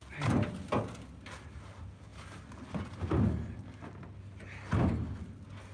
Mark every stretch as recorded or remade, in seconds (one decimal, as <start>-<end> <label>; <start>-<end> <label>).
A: 0.0-5.7 recorded